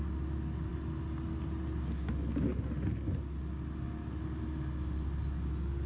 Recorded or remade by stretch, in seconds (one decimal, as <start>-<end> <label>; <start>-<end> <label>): 0.0-5.9 recorded